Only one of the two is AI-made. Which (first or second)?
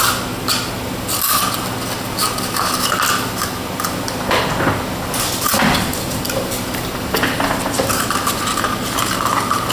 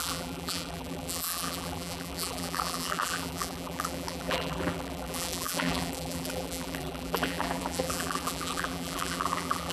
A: second